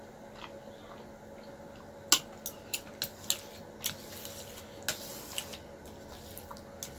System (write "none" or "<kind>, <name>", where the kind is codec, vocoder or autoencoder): none